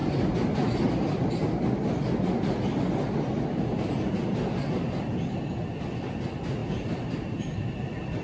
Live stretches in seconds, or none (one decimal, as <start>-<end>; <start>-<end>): 0.0-8.2